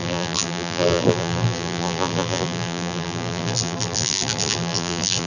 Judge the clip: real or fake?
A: fake